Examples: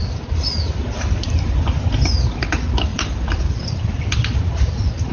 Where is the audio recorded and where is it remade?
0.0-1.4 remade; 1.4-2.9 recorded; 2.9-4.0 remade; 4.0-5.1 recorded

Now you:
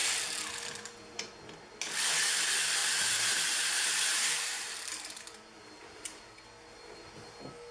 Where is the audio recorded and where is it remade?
0.0-2.8 recorded; 2.8-6.3 remade; 6.3-7.7 recorded